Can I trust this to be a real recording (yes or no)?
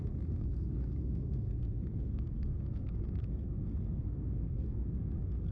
no